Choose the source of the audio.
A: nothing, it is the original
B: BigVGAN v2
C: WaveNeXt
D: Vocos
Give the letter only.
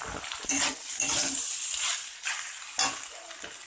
A